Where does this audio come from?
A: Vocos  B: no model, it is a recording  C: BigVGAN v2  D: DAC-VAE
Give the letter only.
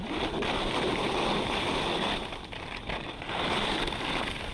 B